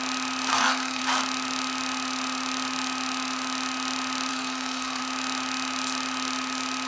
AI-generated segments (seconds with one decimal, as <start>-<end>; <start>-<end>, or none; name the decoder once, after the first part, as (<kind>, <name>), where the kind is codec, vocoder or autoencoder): 0.5-1.0 (codec, SNAC); 4.3-5.0